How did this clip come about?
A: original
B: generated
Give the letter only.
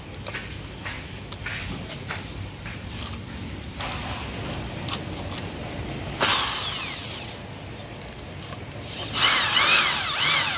A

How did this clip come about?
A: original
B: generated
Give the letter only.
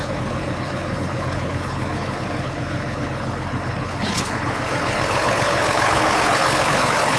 B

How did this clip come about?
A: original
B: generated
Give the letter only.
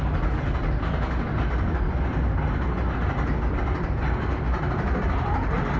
B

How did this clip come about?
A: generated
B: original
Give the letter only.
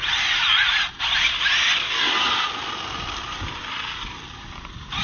B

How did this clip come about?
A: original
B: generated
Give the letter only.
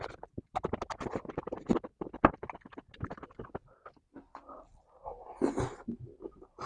A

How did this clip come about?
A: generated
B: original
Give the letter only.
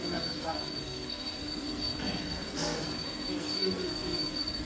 A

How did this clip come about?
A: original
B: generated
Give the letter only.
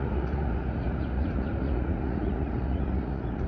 B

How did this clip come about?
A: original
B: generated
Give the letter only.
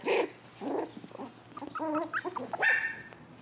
A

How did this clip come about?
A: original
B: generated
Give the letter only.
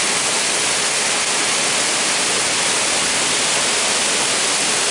A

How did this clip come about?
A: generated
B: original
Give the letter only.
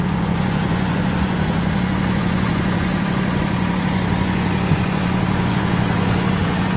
A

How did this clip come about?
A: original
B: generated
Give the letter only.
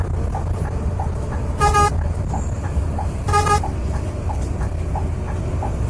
A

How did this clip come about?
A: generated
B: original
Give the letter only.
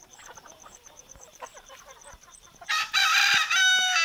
A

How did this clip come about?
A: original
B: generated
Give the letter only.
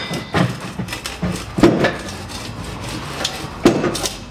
A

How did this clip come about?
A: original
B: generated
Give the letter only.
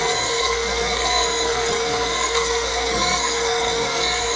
B